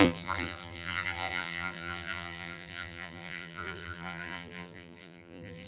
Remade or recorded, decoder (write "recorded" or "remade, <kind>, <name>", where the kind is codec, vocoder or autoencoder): remade, vocoder, BigVGAN v2